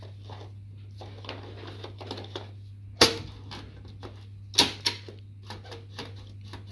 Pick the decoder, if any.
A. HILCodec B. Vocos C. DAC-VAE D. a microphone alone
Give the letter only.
D